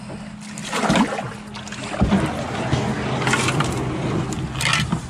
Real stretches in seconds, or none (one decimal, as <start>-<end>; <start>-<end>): 0.0-5.1